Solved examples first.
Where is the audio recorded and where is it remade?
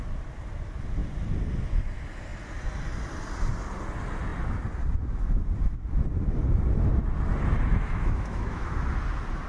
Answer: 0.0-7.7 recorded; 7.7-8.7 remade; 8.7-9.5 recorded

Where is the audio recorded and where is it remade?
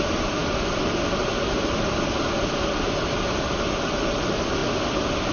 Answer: 0.0-5.3 recorded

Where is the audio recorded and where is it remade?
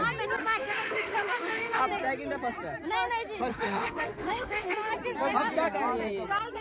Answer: 0.0-0.4 recorded; 0.4-1.8 remade; 1.8-3.5 recorded; 3.5-4.9 remade; 4.9-6.6 recorded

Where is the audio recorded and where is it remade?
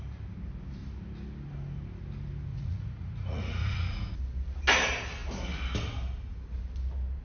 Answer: 0.0-2.5 recorded; 2.5-4.1 remade; 4.1-7.2 recorded